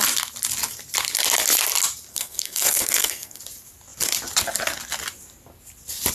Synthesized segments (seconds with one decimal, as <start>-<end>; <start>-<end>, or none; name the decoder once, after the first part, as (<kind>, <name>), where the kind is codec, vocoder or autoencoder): 2.1-3.4 (codec, SNAC)